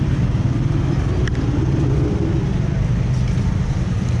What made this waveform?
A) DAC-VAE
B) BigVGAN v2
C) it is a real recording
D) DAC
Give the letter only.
C